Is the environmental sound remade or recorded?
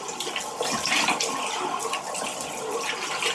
recorded